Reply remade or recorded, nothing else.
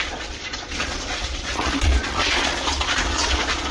remade